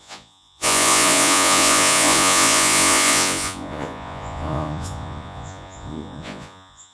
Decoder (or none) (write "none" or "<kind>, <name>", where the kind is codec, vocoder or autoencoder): vocoder, Vocos